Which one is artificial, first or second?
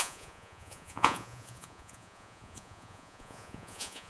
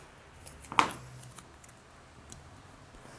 first